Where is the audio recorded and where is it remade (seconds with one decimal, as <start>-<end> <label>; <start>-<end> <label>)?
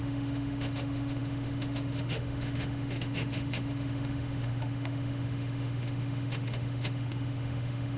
0.0-8.0 remade